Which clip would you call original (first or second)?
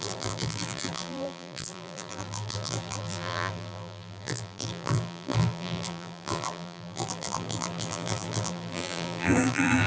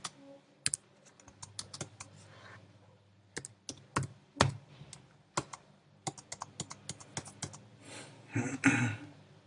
second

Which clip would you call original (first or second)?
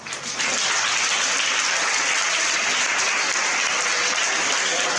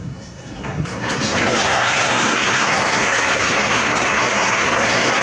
first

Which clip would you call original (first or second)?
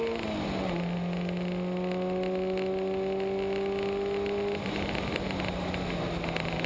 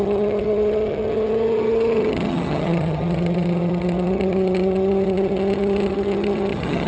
first